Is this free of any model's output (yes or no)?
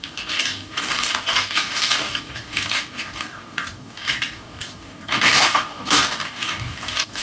no